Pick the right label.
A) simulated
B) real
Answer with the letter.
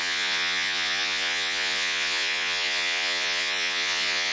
A